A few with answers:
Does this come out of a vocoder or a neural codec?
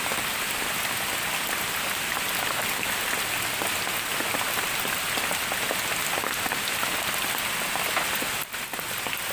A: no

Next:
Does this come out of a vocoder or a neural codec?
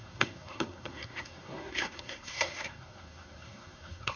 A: yes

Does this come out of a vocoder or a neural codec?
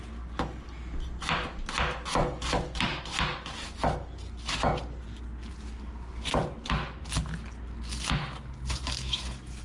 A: no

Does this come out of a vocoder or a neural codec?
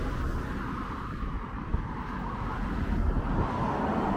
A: no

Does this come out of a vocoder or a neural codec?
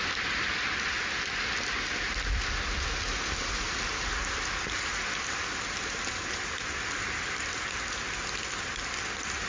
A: no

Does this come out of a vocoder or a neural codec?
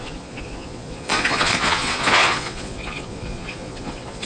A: yes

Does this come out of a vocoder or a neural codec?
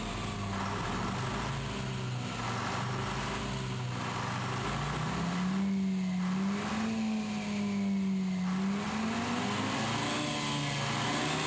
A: no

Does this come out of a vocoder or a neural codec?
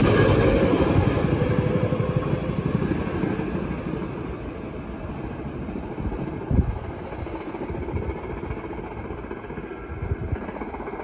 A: no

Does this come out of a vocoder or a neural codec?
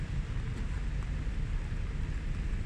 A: no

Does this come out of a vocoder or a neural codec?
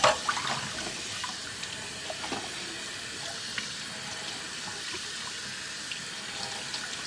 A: no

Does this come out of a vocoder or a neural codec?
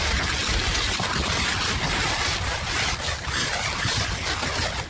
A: no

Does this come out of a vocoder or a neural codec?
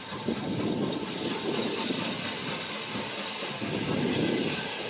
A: no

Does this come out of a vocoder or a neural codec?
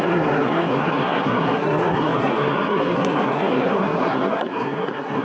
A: yes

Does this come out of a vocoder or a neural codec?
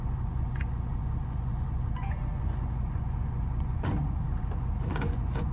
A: yes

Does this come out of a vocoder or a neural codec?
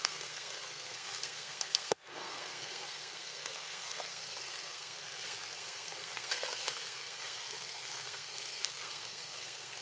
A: yes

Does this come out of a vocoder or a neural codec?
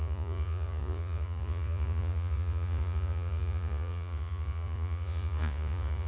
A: yes